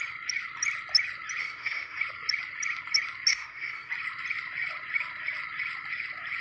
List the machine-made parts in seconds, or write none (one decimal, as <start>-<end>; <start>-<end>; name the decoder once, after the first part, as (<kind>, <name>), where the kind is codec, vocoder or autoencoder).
1.4-2.0 (codec, SNAC); 3.3-3.9